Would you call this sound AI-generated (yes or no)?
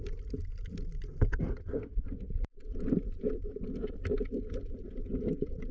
yes